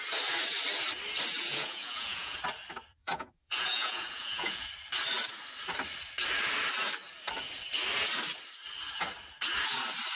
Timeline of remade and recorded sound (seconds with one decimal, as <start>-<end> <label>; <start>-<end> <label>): 0.0-1.5 recorded; 1.5-2.4 remade; 2.4-3.0 recorded; 3.0-4.7 remade; 4.7-10.1 recorded